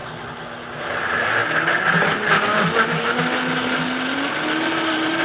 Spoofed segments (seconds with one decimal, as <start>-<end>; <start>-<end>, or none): none